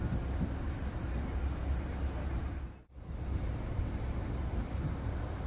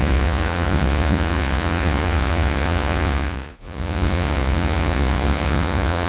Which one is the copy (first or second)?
second